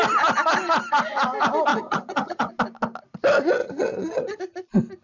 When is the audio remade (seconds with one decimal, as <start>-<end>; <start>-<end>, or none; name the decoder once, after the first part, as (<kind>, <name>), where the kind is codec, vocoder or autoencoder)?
1.7-2.5 (vocoder, HiFi-GAN); 3.6-4.4